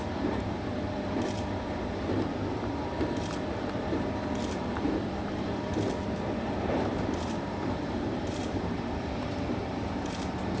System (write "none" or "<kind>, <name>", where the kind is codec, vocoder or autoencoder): vocoder, BigVGAN v2